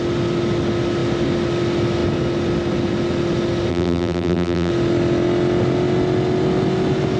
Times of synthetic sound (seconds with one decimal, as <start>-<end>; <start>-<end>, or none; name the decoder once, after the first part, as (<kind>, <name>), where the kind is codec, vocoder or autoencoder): 3.7-4.7 (vocoder, BigVGAN v2)

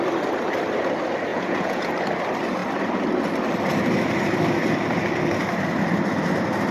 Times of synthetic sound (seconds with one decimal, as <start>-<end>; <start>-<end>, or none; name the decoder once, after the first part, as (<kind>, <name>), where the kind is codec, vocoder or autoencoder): 1.3-1.9 (vocoder, Vocos)

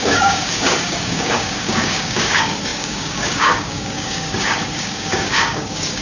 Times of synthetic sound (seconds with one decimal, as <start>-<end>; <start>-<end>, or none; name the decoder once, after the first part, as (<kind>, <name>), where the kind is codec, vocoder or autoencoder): 0.0-6.0 (codec, DAC)

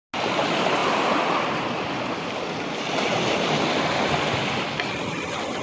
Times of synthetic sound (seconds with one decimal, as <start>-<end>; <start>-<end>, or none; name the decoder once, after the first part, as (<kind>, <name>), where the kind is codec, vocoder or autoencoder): none

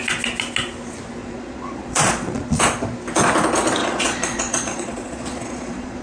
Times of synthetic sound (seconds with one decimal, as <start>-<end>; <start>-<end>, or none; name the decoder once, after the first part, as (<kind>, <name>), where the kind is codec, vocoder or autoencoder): 1.2-2.6 (vocoder, Vocos); 3.8-6.0

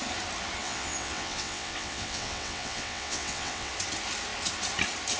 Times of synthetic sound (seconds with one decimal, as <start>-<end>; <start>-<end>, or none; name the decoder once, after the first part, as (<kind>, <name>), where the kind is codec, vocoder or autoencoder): 0.6-3.7 (vocoder, WaveNeXt)

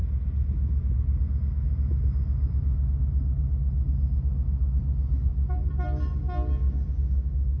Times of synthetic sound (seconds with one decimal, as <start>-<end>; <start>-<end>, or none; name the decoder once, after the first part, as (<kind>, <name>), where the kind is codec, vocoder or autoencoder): none